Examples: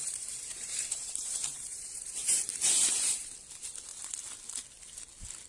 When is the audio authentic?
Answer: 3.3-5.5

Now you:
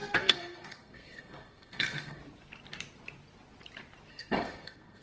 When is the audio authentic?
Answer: 2.2-4.1

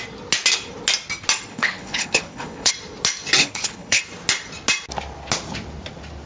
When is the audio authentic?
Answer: 0.0-1.5; 2.7-3.4; 4.0-6.3

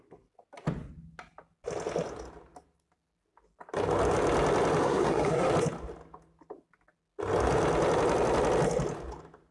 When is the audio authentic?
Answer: 0.0-4.8; 5.5-9.5

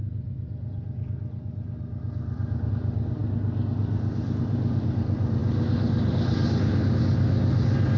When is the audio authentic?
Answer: 0.0-8.0